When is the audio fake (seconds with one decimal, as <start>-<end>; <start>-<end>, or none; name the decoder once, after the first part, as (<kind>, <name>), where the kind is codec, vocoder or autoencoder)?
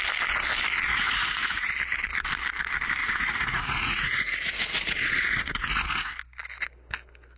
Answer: 0.9-1.7 (vocoder, Vocos); 3.0-6.1